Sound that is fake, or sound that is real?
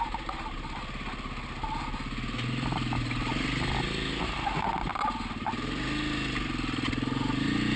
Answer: real